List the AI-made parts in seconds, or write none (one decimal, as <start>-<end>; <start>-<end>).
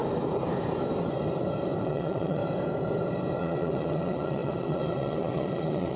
1.8-2.4; 3.4-6.0